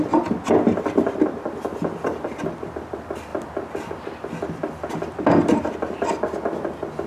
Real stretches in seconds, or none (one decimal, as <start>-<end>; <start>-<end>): 0.0-7.1